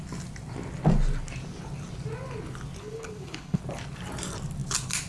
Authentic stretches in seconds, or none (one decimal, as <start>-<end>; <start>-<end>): 0.0-2.8; 3.6-5.1